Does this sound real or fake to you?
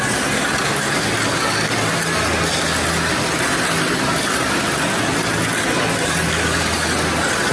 real